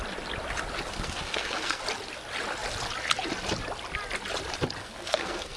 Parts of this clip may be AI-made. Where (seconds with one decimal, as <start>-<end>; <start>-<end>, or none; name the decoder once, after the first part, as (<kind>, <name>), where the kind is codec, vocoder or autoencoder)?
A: 0.9-1.8 (codec, SNAC); 4.8-5.6